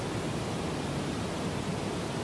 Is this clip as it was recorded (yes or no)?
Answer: no